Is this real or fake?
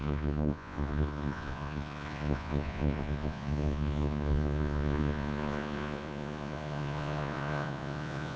fake